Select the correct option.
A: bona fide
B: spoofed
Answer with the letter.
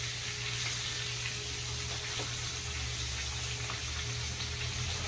A